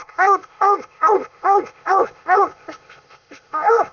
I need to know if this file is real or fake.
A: fake